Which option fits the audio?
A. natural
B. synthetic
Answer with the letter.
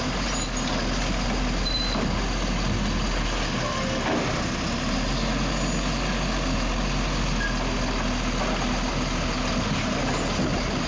A